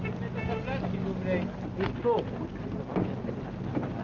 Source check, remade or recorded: recorded